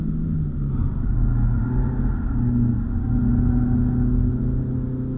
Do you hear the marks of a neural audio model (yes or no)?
no